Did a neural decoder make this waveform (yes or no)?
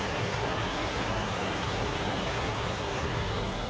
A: yes